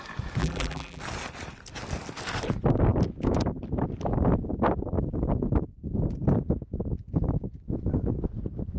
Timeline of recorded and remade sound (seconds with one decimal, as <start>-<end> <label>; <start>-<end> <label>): 0.0-0.4 recorded; 0.4-1.0 remade; 1.0-8.8 recorded